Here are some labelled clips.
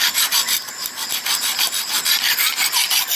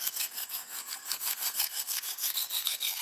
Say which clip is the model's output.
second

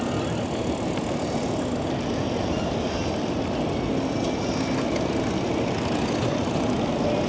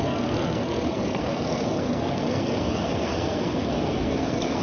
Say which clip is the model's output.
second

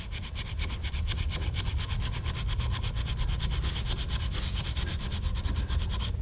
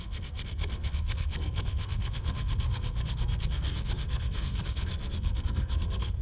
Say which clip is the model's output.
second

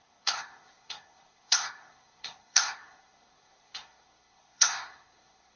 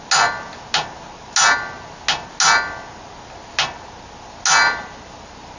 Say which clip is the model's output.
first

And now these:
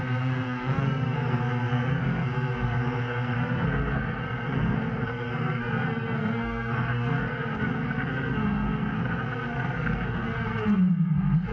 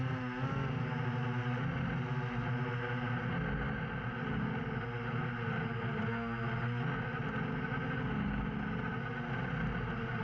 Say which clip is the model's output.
first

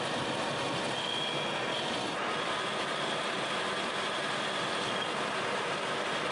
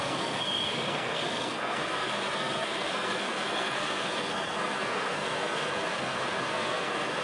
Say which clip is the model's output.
second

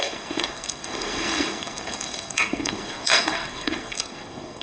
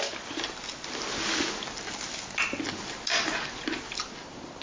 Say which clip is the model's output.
first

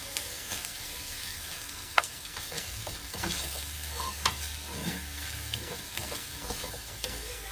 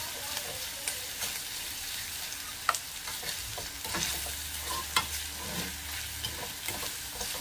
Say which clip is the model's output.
first